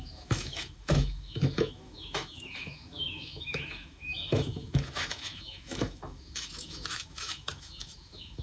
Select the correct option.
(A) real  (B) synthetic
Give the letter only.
B